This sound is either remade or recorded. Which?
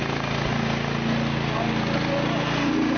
recorded